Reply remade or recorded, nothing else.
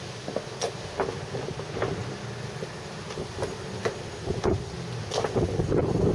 recorded